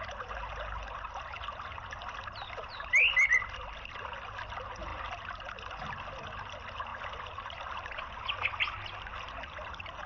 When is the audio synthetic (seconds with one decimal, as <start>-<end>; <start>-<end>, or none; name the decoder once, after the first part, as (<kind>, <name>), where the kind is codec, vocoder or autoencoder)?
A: none